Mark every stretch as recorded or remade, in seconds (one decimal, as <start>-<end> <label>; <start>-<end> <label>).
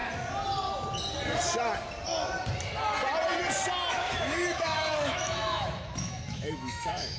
0.0-3.9 recorded; 3.9-7.2 remade